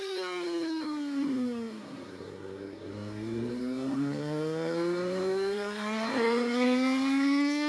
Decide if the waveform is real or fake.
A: fake